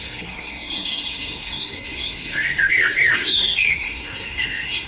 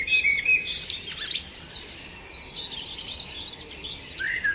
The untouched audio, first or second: second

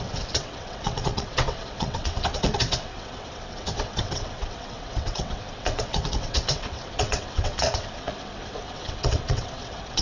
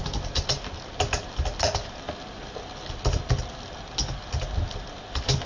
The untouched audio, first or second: second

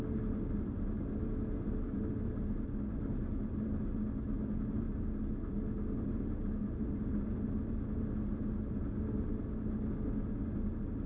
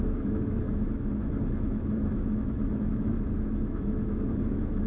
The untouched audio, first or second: first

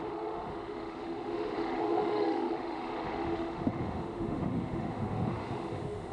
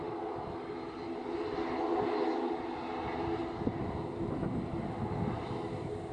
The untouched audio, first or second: second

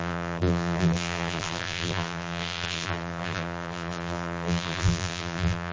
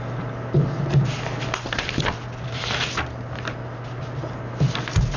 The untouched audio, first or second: second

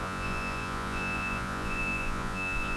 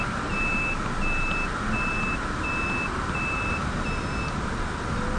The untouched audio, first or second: second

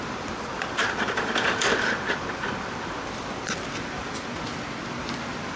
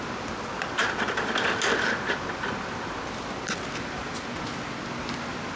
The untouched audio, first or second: second